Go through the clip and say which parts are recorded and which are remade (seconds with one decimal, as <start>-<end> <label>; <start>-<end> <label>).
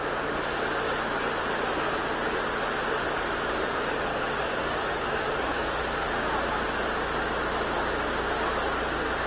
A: 0.0-4.1 recorded; 4.1-5.8 remade; 5.8-9.3 recorded